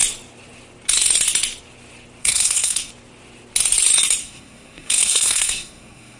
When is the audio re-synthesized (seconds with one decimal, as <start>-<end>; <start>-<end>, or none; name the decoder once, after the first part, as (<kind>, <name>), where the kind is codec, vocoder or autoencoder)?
2.2-2.9 (codec, SNAC); 4.2-6.2